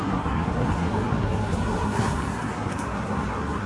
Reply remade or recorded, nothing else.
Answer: remade